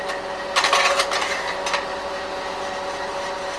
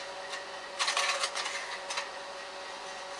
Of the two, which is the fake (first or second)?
second